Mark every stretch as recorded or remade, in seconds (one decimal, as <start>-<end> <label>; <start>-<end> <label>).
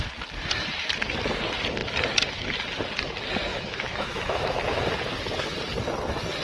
0.0-3.5 recorded; 3.5-4.8 remade; 4.8-6.4 recorded